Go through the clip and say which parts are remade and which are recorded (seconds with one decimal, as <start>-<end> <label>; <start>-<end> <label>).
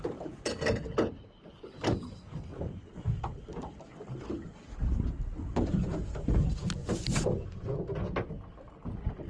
0.0-2.5 recorded; 2.5-3.7 remade; 3.7-6.8 recorded; 6.8-7.9 remade; 7.9-9.3 recorded